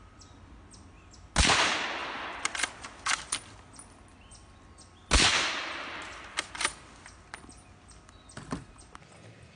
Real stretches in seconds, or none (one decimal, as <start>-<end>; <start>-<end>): 0.0-9.6